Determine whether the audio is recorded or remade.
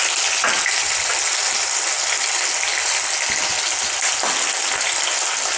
recorded